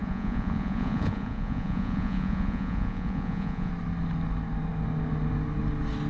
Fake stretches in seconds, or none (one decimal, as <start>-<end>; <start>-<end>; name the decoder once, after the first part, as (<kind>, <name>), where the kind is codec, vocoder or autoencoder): 0.0-3.7 (vocoder, Vocos)